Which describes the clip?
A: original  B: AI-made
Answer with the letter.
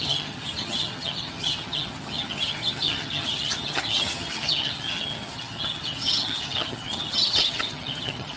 B